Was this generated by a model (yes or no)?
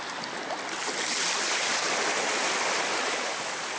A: no